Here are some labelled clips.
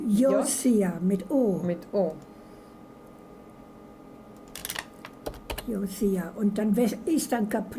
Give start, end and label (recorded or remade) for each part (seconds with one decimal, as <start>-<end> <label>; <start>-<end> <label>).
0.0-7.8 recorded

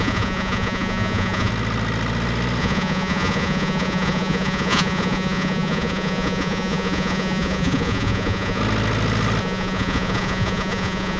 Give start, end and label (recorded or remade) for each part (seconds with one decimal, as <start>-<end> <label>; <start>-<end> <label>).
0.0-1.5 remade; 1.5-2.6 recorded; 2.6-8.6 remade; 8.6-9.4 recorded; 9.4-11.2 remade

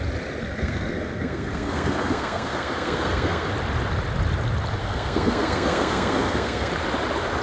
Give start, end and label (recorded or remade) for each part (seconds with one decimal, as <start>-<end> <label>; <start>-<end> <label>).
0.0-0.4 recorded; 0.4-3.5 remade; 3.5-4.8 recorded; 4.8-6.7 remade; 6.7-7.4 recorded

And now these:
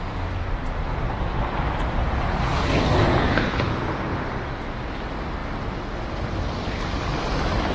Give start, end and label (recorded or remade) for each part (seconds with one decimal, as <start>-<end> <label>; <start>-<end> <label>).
0.0-2.0 recorded; 2.0-4.2 remade; 4.2-7.7 recorded

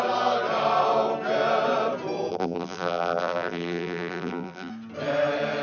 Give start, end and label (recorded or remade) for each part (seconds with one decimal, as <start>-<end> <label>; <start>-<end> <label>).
0.0-2.3 recorded; 2.3-4.7 remade; 4.7-5.6 recorded

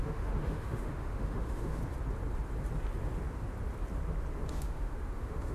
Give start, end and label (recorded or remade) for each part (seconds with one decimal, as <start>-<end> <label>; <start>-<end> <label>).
0.0-1.8 remade; 1.8-4.5 recorded; 4.5-5.5 remade

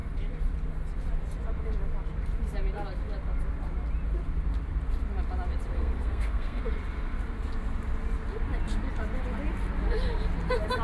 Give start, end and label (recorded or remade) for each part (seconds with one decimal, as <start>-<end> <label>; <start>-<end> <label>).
0.0-5.7 recorded; 5.7-6.6 remade; 6.6-10.8 recorded

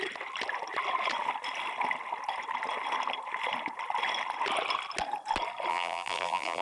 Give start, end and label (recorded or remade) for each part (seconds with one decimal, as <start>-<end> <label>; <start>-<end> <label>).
0.0-5.7 recorded; 5.7-6.6 remade